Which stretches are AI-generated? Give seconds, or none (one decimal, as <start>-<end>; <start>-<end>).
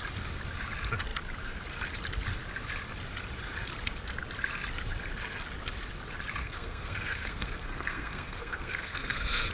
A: 6.4-9.5